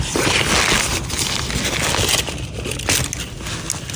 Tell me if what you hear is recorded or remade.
recorded